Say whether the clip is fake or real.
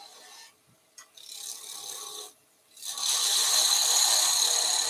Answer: real